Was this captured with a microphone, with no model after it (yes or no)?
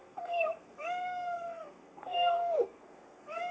no